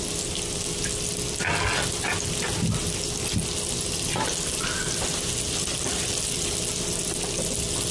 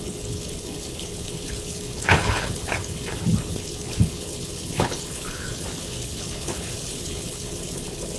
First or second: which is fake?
second